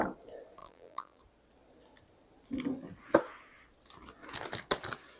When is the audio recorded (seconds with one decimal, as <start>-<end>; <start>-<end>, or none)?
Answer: 0.0-0.6; 1.2-5.2